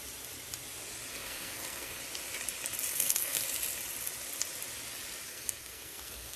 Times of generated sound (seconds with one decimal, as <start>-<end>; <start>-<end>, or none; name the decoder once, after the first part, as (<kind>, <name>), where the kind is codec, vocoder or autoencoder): 1.1-2.0 (codec, SNAC); 2.9-3.4; 5.3-6.4